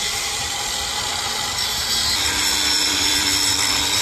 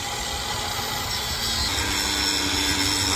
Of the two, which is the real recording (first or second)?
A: second